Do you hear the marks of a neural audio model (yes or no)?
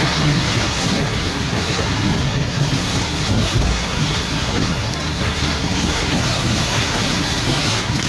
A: yes